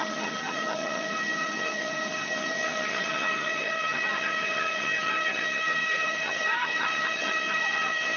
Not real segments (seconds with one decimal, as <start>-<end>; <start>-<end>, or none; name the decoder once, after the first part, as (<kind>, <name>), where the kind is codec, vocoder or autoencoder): 0.0-8.2 (vocoder, HiFi-GAN)